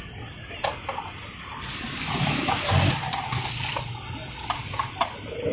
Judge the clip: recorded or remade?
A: recorded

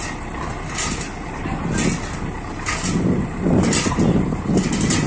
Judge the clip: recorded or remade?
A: recorded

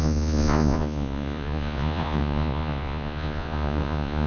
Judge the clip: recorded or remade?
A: remade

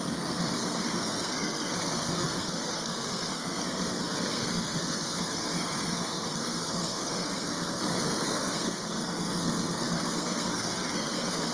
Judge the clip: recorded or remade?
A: remade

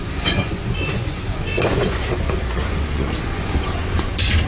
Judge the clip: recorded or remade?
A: remade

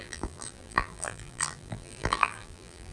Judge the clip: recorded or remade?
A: remade